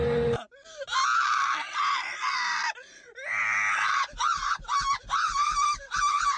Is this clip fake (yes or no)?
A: no